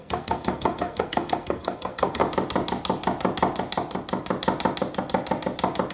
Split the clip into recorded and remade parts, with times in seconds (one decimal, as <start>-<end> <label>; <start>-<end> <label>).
0.0-2.2 remade; 2.2-5.9 recorded